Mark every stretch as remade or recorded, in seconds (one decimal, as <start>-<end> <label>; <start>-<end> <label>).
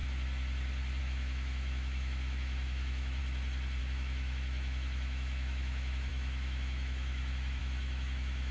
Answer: 0.0-1.0 recorded; 1.0-3.2 remade; 3.2-3.8 recorded; 3.8-8.5 remade